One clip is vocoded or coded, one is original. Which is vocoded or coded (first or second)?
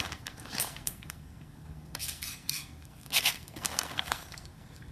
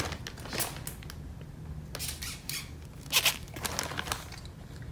first